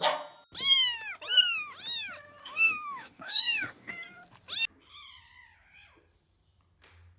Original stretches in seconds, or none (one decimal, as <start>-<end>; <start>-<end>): 0.0-2.4; 3.9-7.2